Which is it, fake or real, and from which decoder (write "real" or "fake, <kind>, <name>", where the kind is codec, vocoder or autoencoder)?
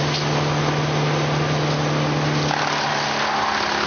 real